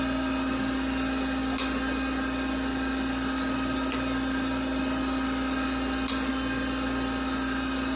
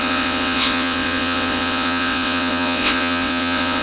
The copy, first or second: second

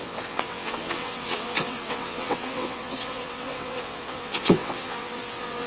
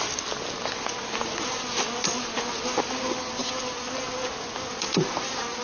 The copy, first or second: first